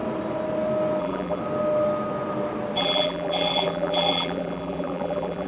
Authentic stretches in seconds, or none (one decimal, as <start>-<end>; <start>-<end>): 0.0-1.0; 1.4-2.8